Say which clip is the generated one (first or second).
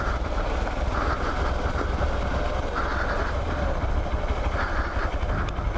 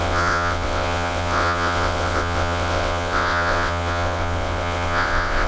second